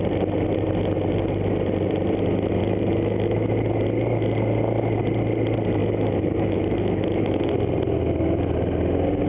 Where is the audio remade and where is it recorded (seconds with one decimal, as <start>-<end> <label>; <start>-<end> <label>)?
0.0-2.6 recorded; 2.6-3.7 remade; 3.7-5.8 recorded; 5.8-7.5 remade; 7.5-9.3 recorded